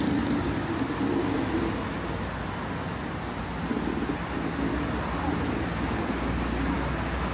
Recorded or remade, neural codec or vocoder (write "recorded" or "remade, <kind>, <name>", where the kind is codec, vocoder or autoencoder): recorded